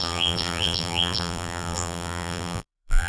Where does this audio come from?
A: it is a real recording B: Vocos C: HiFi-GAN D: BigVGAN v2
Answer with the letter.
D